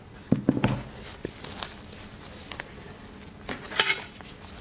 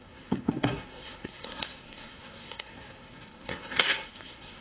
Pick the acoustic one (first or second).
first